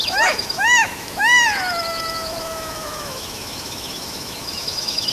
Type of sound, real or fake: fake